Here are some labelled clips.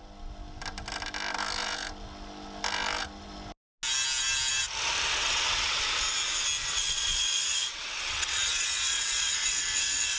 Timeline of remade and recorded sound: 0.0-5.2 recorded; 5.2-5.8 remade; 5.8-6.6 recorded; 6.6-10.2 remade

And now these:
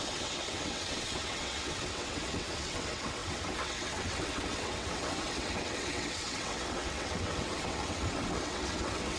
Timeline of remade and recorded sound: 0.0-9.2 remade

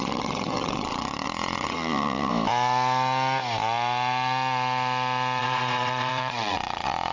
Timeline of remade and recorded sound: 0.0-2.3 remade; 2.3-5.4 recorded; 5.4-7.1 remade

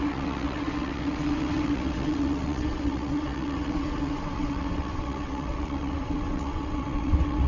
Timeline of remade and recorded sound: 0.0-7.5 remade

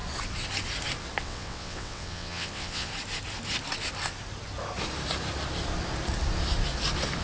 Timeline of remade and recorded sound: 0.0-1.2 recorded; 1.2-2.9 remade; 2.9-7.2 recorded